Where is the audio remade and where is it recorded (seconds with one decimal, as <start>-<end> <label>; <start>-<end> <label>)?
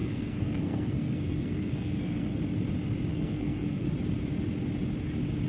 0.0-2.4 remade; 2.4-3.1 recorded; 3.1-3.9 remade; 3.9-5.5 recorded